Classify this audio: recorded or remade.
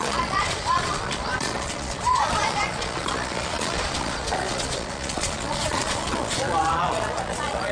remade